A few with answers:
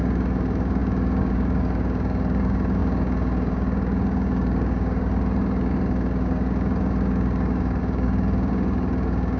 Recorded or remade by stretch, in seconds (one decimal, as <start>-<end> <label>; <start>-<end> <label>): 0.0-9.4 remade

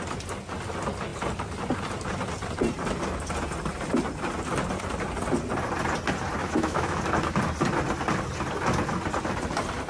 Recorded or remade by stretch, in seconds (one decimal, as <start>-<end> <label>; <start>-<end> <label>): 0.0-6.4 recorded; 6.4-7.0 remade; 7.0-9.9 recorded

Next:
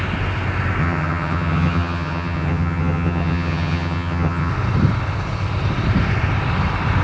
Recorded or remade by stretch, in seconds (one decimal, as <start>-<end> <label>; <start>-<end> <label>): 0.0-0.8 recorded; 0.8-4.5 remade; 4.5-7.0 recorded

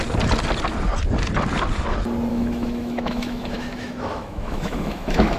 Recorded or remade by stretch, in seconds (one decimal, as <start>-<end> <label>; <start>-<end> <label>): 0.0-2.3 recorded; 2.3-5.4 remade

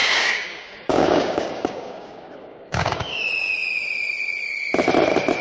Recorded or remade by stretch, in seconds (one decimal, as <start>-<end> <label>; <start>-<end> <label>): 0.0-3.2 remade; 3.2-5.4 recorded

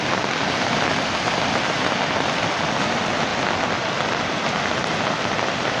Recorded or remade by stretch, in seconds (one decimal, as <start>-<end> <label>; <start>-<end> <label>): 0.0-5.8 recorded